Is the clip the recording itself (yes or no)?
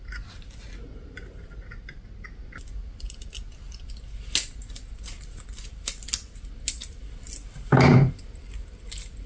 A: yes